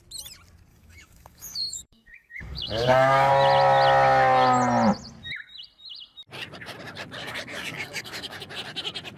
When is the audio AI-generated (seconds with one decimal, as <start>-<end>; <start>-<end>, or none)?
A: 0.7-3.3; 7.2-8.5